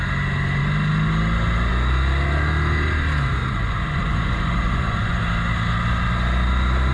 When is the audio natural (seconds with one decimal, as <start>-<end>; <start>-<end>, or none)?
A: 0.0-3.4; 5.2-6.9